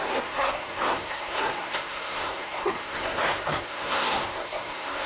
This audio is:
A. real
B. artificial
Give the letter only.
B